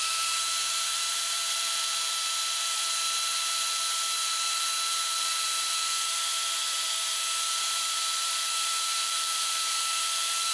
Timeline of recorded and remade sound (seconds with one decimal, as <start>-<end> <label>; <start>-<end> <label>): 0.0-6.3 remade; 6.3-7.5 recorded; 7.5-10.5 remade

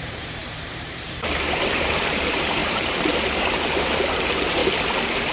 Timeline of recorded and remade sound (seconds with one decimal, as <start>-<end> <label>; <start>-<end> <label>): 0.0-4.6 remade; 4.6-5.3 recorded